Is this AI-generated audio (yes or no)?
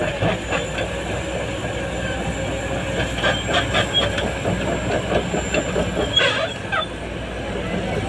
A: no